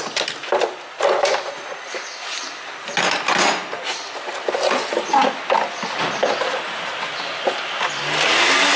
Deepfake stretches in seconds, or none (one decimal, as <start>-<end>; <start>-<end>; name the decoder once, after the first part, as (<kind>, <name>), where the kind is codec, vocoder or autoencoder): none